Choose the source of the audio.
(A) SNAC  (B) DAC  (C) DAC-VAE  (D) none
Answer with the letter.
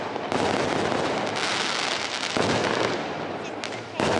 D